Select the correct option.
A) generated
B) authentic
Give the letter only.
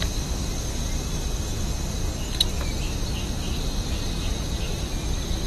B